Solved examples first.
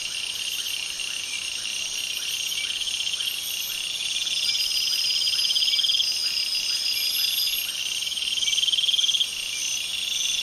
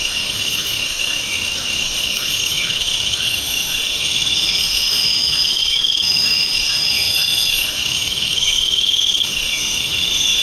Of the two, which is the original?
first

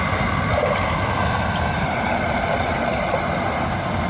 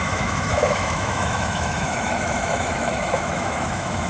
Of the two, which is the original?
first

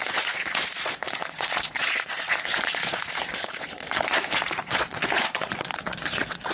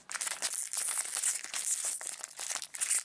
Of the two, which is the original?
second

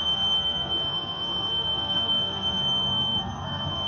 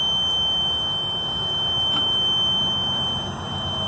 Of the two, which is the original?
second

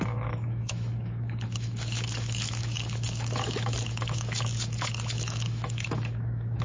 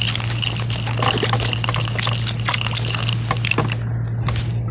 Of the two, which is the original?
second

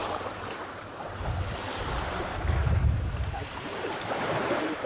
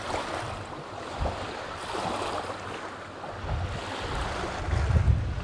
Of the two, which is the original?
second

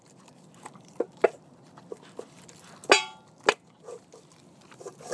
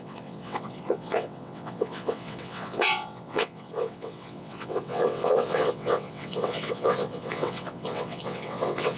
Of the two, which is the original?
first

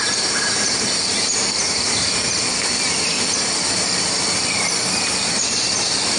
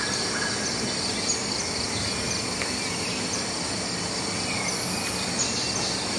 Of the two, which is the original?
second